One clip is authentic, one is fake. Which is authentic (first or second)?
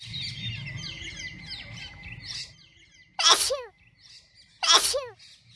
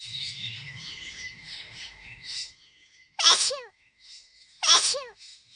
first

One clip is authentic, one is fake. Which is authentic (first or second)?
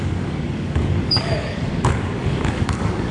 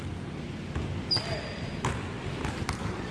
second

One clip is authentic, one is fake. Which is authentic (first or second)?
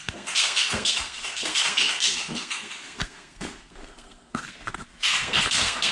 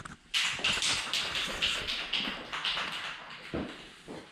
second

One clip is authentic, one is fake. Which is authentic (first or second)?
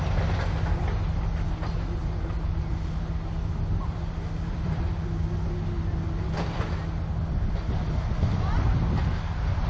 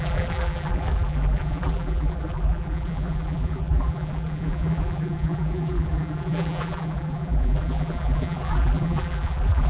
first